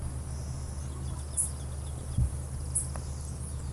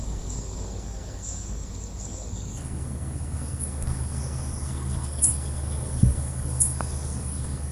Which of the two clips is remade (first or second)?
second